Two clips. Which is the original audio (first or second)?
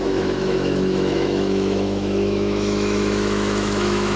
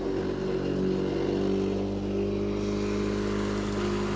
second